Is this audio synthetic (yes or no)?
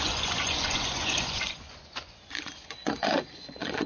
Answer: yes